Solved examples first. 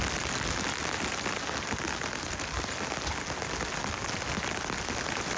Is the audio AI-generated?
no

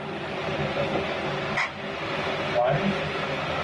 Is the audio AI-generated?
no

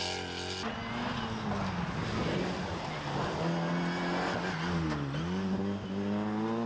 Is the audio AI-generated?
no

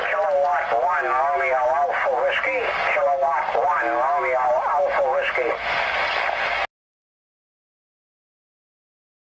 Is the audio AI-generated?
no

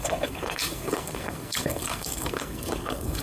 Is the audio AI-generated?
yes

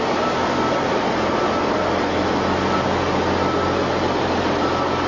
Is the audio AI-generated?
no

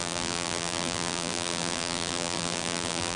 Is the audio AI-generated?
yes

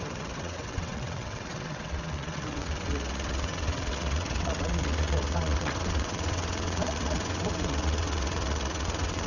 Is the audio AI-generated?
yes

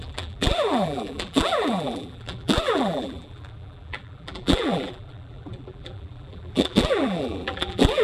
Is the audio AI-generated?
yes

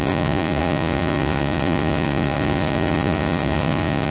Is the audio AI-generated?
yes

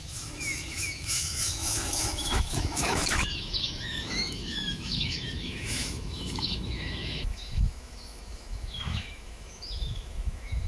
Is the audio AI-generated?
yes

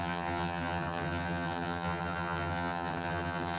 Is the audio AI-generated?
yes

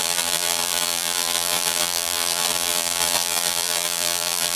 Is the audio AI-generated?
yes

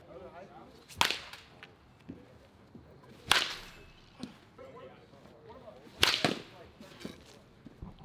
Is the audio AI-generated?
no